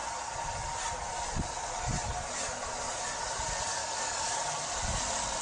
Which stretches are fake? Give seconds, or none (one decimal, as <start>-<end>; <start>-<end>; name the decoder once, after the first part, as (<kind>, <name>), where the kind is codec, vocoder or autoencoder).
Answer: 3.7-4.4 (codec, DAC)